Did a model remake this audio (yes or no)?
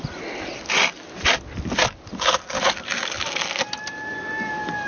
no